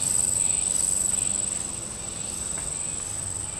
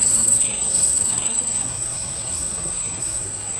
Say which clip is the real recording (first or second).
first